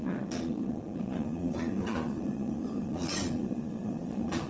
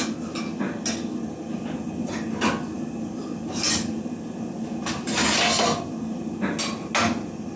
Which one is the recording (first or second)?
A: second